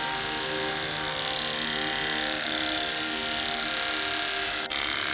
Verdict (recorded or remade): recorded